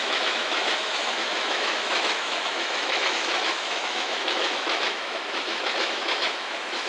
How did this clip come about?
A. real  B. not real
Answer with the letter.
B